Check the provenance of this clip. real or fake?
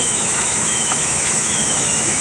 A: fake